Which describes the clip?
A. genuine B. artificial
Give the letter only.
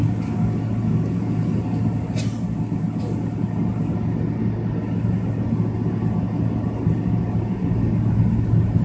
A